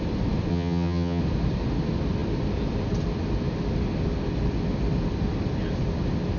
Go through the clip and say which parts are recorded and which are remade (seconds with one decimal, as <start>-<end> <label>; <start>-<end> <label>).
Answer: 0.0-0.5 recorded; 0.5-1.2 remade; 1.2-6.4 recorded